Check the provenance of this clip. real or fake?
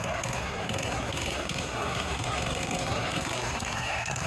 fake